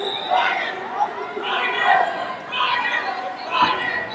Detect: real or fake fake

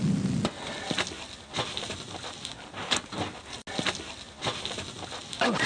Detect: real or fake real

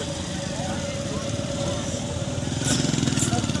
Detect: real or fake real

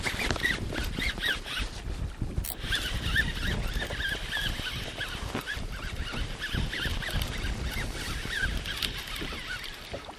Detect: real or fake real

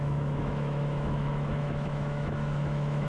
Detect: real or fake fake